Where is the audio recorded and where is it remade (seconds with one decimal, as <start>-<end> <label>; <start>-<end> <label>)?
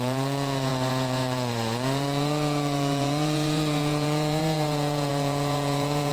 0.0-6.1 remade